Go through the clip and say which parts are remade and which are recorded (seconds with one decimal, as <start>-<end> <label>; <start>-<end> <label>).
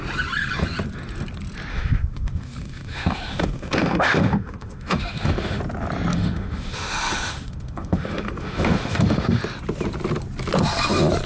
0.0-1.7 recorded; 1.7-5.6 remade; 5.6-6.1 recorded; 6.1-9.4 remade; 9.4-11.3 recorded